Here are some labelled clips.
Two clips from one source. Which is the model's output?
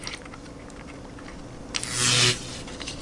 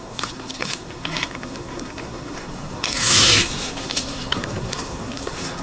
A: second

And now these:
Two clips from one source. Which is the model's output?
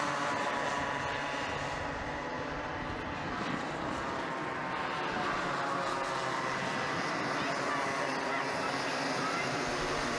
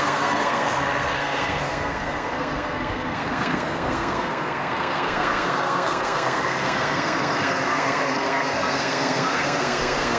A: second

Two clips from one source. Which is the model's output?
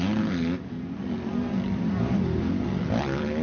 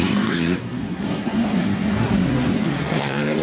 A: second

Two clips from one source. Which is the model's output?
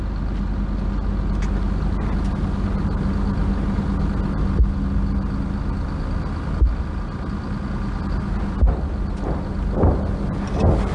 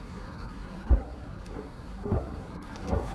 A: second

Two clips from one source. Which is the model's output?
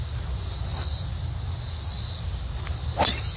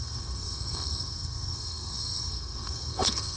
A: second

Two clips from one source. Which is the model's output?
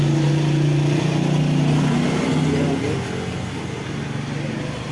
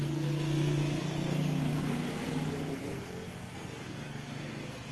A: second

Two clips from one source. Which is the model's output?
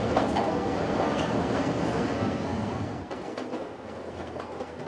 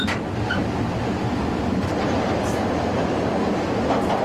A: first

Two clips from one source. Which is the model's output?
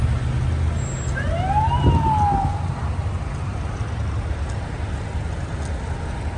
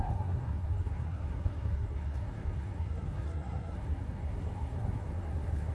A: second